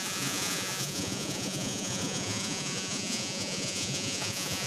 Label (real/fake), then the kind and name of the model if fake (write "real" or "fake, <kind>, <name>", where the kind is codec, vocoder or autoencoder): fake, vocoder, Vocos